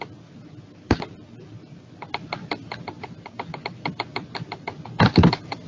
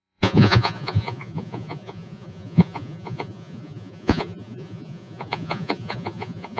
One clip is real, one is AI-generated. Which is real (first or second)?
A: first